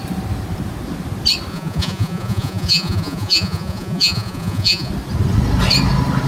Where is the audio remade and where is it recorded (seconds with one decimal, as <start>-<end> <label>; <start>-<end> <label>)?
0.0-1.5 recorded; 1.5-4.9 remade; 4.9-6.3 recorded